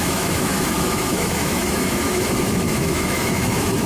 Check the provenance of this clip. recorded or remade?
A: remade